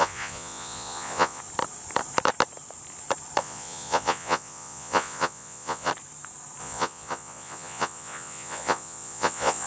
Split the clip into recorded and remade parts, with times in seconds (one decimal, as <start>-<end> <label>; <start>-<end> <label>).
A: 0.0-1.4 remade; 1.4-3.4 recorded; 3.4-5.9 remade; 5.9-6.6 recorded; 6.6-9.7 remade